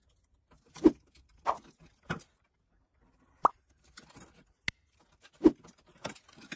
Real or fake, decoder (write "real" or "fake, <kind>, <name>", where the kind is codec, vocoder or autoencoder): real